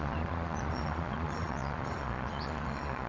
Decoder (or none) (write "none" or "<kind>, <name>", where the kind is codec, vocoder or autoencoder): vocoder, Vocos